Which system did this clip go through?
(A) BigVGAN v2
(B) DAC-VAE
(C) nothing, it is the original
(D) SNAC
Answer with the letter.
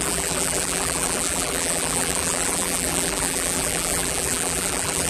A